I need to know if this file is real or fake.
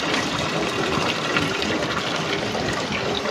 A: real